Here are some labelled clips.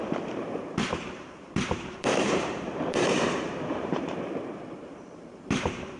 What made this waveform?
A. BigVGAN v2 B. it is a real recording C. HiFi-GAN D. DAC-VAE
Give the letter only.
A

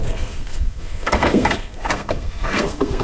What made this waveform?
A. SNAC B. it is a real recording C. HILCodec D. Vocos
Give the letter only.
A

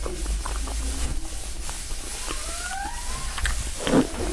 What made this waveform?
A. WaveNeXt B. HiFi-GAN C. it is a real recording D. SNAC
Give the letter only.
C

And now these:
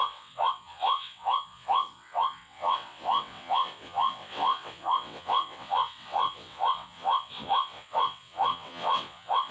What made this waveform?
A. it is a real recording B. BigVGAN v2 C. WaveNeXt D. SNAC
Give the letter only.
C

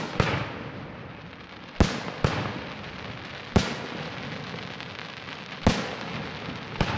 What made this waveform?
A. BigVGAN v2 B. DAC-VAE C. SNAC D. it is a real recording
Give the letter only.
D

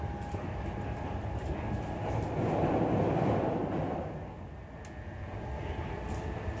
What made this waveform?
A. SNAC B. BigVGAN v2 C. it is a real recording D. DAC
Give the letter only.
C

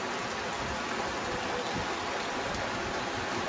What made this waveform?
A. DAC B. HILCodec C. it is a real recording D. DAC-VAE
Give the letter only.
C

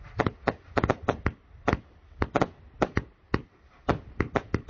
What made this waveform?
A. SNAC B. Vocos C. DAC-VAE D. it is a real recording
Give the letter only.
D